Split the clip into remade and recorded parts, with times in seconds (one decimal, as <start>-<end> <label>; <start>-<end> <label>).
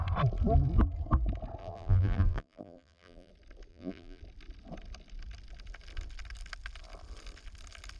0.0-1.6 recorded; 1.6-3.3 remade; 3.3-3.7 recorded; 3.7-4.2 remade; 4.2-8.0 recorded